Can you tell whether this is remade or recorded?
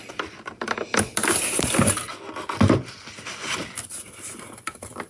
recorded